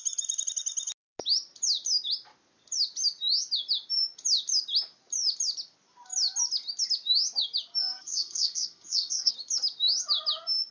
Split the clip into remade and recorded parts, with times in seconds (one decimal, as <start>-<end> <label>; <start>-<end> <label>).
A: 0.0-7.8 recorded; 7.8-9.3 remade; 9.3-10.7 recorded